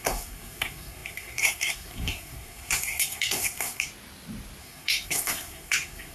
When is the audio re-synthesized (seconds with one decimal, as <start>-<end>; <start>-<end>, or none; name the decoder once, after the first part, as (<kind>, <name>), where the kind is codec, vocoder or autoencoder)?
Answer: 0.0-3.9 (codec, SNAC); 4.6-6.1

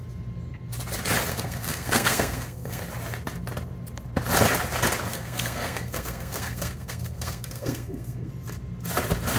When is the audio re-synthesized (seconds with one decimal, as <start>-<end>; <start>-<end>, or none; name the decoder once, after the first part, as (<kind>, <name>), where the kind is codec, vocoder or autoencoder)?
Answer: 1.3-2.8 (codec, SNAC); 5.1-8.3

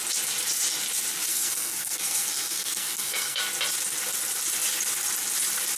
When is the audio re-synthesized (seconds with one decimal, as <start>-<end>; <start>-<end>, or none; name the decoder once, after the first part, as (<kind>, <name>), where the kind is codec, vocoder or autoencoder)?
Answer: 1.3-3.4 (codec, SNAC)

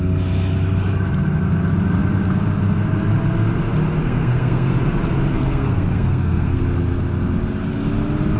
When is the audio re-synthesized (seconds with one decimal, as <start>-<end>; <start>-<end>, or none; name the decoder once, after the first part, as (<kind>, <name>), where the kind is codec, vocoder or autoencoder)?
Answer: 4.0-4.7 (codec, SNAC); 5.3-6.6

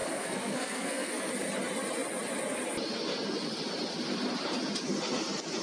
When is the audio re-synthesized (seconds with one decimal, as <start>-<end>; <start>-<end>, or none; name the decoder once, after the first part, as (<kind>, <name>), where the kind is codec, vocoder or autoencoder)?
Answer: 0.0-1.3 (codec, SNAC)

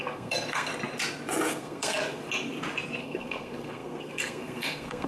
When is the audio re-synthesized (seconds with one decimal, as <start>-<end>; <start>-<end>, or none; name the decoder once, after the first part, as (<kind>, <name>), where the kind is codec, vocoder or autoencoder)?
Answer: 0.0-0.7 (codec, SNAC); 1.5-2.2; 3.0-5.1